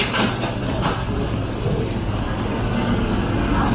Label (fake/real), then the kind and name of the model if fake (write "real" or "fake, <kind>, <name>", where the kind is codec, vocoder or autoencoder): real